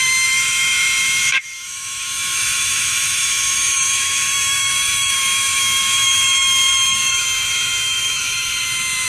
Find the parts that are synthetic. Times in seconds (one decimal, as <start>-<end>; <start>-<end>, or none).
0.0-9.1